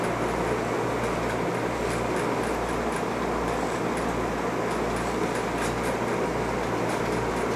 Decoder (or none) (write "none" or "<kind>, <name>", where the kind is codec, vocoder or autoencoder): none